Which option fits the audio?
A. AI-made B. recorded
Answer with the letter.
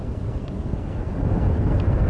A